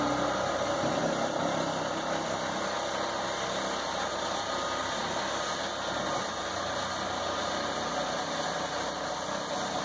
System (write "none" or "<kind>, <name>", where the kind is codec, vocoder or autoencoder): none